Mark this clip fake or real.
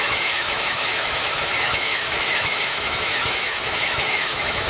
fake